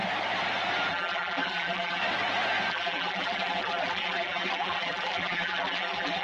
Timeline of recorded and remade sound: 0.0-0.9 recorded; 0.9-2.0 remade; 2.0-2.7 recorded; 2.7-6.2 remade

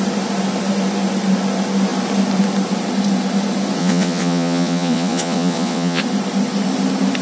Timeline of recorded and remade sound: 0.0-3.8 recorded; 3.8-6.0 remade; 6.0-7.2 recorded

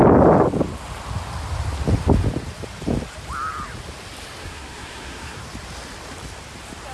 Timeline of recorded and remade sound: 0.0-4.4 recorded; 4.4-5.4 remade; 5.4-6.9 recorded

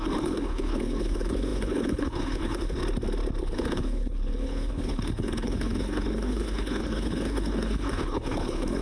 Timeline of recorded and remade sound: 0.0-2.8 remade; 2.8-3.4 recorded; 3.4-8.8 remade

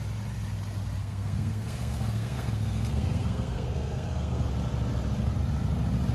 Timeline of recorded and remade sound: 0.0-1.0 recorded; 1.0-4.5 remade; 4.5-6.1 recorded